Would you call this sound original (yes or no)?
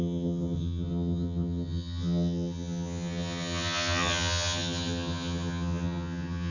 no